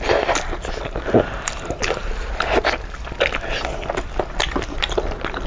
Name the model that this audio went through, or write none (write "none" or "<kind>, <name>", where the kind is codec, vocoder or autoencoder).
none